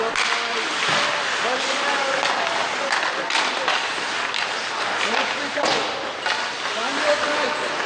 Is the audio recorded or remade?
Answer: recorded